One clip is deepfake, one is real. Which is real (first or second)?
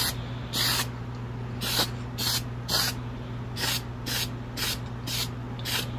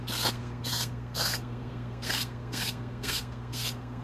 first